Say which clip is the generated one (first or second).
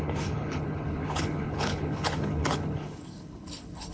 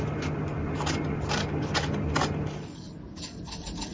first